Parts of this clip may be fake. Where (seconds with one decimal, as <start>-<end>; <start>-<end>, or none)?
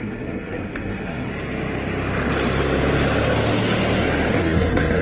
0.0-1.3; 4.3-5.0